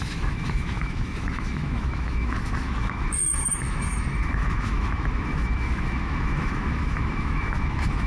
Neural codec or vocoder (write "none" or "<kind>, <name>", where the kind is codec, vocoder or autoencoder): autoencoder, DAC-VAE